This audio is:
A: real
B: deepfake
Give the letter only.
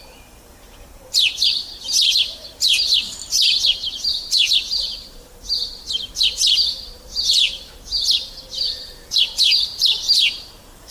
B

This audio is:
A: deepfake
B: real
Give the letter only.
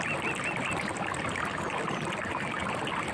B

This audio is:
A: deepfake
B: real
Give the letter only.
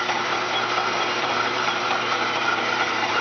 A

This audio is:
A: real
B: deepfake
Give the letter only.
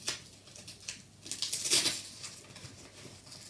A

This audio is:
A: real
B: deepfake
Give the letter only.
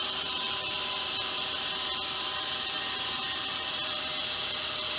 B